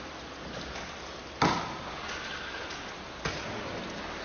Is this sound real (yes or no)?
yes